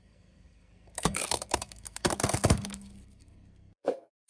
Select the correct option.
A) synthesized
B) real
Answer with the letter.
A